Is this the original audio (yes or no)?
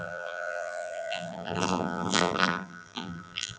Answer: no